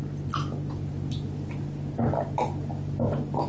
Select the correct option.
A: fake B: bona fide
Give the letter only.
B